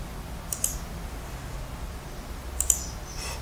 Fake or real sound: real